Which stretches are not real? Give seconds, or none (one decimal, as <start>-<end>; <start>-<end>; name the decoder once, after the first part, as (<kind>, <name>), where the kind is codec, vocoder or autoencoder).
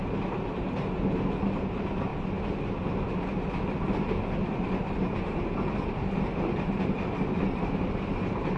0.0-2.1 (vocoder, BigVGAN v2); 4.9-8.6